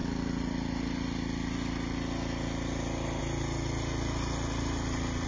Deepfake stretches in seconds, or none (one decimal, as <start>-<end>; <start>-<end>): none